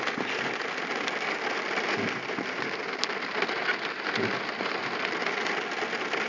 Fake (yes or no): no